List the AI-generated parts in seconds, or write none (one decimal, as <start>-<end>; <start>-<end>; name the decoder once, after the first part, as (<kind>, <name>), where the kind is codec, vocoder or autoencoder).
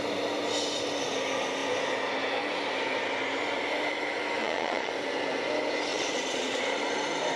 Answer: 4.4-4.9 (vocoder, Vocos); 5.9-6.6